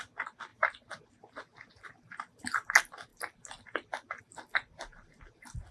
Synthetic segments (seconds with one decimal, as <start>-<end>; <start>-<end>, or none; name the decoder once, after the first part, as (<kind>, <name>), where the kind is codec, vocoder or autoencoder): none